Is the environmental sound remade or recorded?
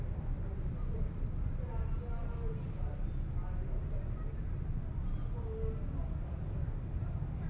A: recorded